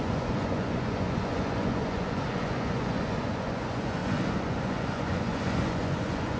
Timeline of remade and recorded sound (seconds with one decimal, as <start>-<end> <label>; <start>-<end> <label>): 0.0-6.4 remade